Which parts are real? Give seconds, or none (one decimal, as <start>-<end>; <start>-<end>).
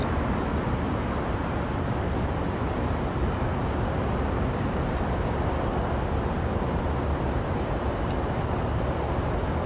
0.0-3.2; 5.7-9.7